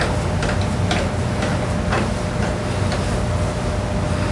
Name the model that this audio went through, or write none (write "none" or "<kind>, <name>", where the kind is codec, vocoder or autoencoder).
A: none